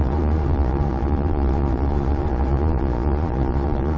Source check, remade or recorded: remade